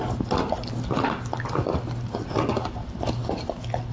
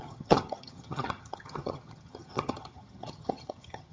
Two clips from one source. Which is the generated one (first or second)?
second